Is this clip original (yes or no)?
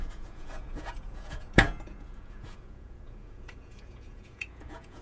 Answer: no